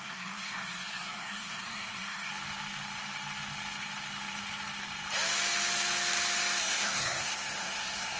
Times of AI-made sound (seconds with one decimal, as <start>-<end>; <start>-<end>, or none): 0.0-2.3; 6.6-8.2